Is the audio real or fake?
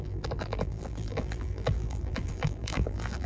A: fake